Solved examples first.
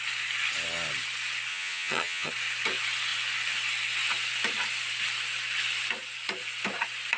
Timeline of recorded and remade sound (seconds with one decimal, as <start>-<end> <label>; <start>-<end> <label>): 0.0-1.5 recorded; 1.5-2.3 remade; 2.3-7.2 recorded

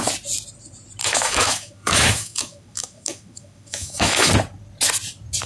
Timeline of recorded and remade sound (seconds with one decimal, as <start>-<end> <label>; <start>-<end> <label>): 0.0-1.0 recorded; 1.0-4.3 remade; 4.3-5.5 recorded

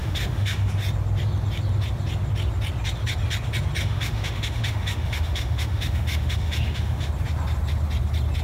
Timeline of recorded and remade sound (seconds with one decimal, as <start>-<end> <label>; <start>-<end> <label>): 0.0-0.7 remade; 0.7-3.8 recorded; 3.8-7.1 remade; 7.1-8.4 recorded

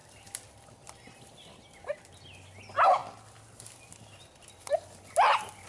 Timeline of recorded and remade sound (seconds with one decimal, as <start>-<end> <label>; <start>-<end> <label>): 0.0-5.7 recorded